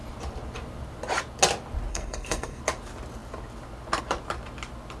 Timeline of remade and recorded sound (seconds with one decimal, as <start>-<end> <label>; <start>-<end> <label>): 0.0-1.9 recorded; 1.9-2.6 remade; 2.6-5.0 recorded